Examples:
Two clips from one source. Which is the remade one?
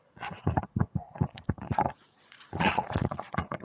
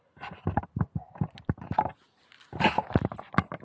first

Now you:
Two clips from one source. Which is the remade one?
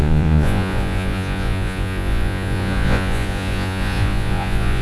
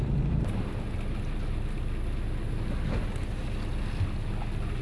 first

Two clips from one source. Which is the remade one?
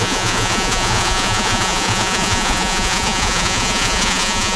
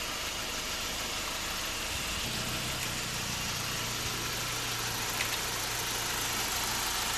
first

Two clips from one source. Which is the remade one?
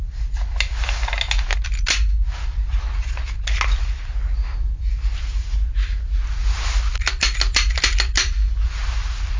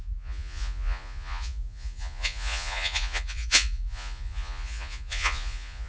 second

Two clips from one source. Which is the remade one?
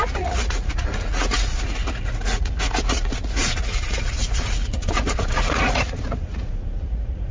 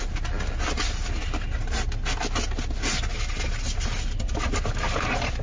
first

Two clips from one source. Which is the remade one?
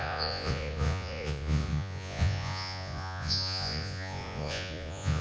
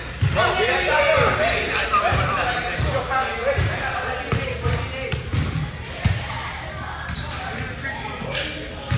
first